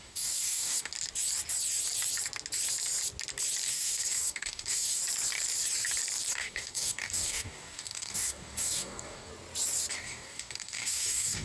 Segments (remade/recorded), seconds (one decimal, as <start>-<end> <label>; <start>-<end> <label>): 0.0-0.9 remade; 0.9-3.7 recorded; 3.7-5.0 remade; 5.0-6.3 recorded; 6.3-9.3 remade; 9.3-9.9 recorded; 9.9-11.4 remade